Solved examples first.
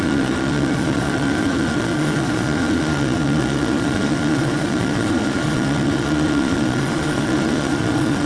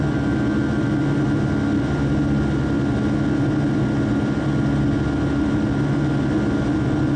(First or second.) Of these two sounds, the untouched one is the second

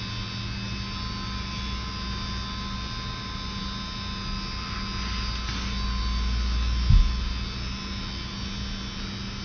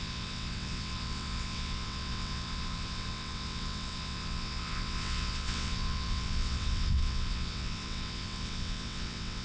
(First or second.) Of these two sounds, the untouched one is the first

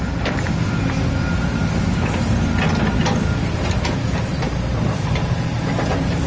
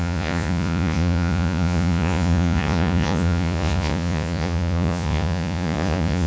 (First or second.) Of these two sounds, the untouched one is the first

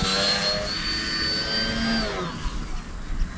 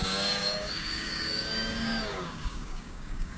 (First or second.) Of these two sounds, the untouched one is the first